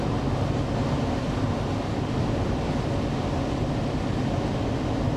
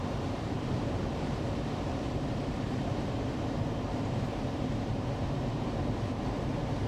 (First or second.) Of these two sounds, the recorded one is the first